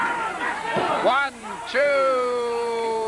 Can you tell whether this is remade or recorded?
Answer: remade